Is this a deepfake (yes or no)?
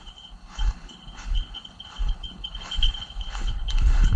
yes